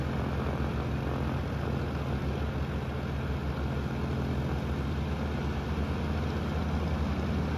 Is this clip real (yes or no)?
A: yes